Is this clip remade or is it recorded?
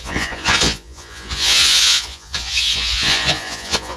remade